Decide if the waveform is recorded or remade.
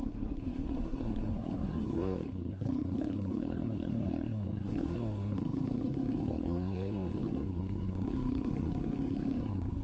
remade